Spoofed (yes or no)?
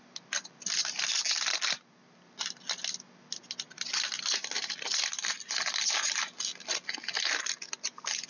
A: no